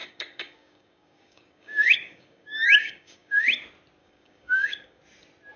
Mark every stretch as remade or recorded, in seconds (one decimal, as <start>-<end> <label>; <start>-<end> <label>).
0.0-3.4 remade; 3.4-4.0 recorded; 4.0-5.0 remade; 5.0-5.6 recorded